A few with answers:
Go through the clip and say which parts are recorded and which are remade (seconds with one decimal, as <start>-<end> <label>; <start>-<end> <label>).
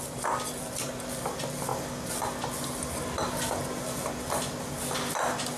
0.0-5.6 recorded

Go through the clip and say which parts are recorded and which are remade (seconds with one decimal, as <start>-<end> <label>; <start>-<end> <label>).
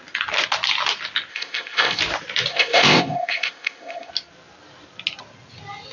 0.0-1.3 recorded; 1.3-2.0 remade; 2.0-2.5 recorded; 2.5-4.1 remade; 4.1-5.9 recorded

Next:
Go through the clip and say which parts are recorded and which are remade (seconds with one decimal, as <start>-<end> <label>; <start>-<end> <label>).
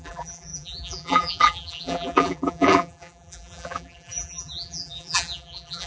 0.0-5.9 remade